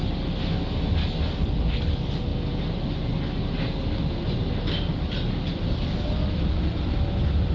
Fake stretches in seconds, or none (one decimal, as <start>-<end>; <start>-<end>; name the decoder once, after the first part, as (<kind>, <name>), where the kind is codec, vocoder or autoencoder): none